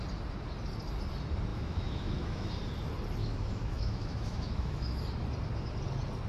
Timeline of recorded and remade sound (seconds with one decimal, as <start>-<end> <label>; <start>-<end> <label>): 0.0-1.5 recorded; 1.5-2.5 remade; 2.5-3.2 recorded; 3.2-5.0 remade; 5.0-6.3 recorded